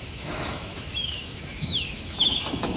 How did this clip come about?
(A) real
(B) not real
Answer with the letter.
B